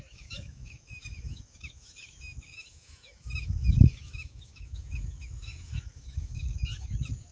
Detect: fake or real fake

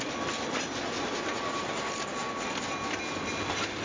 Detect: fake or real real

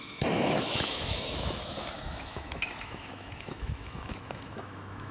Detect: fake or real fake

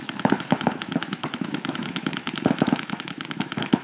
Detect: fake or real fake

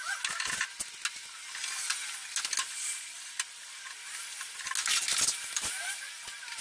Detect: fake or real real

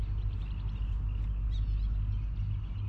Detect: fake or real real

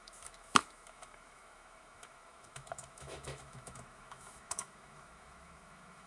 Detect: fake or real fake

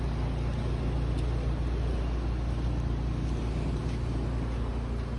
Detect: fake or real real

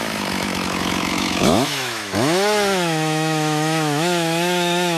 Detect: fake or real fake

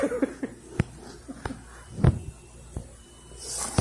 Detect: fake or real real